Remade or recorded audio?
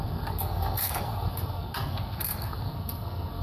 remade